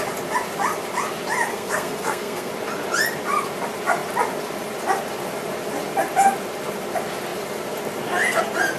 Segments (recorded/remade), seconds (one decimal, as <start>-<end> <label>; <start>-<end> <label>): 0.0-1.5 recorded; 1.5-2.5 remade; 2.5-8.8 recorded